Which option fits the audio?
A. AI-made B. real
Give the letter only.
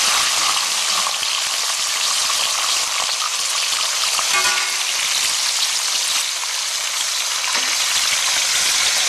B